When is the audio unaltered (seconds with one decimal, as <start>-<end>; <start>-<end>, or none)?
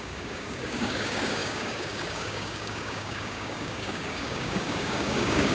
none